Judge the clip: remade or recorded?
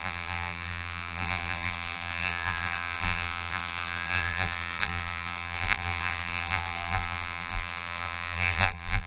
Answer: remade